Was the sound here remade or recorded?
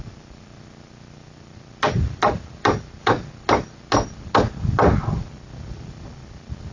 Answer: recorded